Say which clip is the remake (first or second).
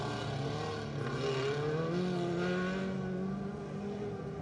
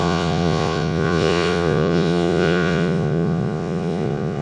second